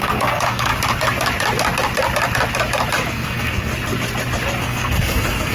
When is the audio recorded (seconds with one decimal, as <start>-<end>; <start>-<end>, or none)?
0.7-3.1; 3.7-4.6